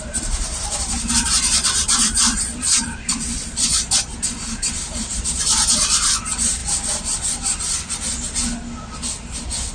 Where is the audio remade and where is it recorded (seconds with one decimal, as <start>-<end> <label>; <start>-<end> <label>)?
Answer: 0.0-6.6 remade; 6.6-9.7 recorded